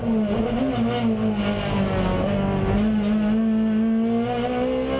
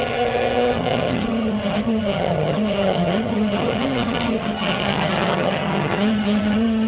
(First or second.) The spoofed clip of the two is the second